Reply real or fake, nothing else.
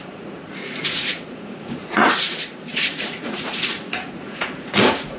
fake